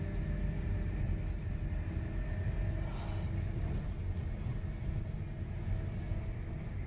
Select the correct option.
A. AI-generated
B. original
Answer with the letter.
B